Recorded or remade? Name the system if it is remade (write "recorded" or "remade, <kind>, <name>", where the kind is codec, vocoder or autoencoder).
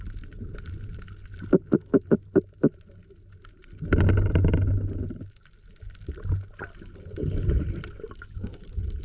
recorded